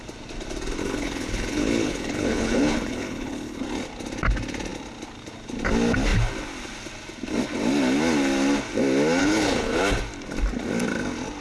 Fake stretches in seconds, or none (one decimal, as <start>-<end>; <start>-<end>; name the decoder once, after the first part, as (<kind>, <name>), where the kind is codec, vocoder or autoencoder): 0.8-3.6 (codec, HILCodec); 9.2-9.8